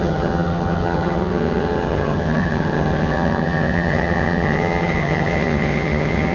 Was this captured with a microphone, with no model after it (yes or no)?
no